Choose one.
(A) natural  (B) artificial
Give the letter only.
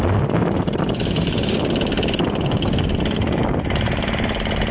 A